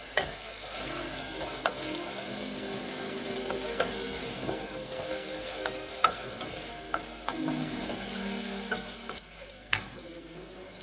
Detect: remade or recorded remade